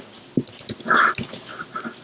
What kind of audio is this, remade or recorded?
recorded